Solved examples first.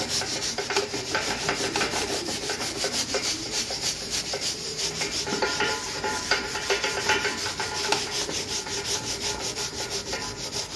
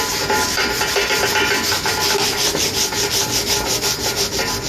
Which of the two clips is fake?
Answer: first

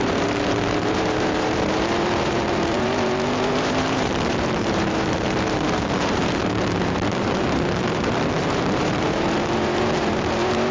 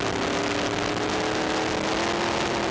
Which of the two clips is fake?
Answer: first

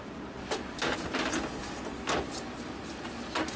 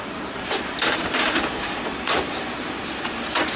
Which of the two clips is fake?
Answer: second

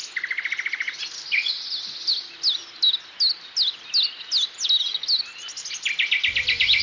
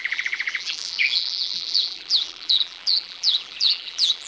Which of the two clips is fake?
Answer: second